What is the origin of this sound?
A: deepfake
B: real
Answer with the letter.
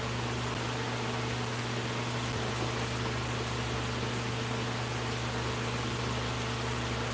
B